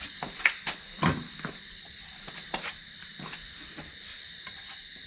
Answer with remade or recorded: recorded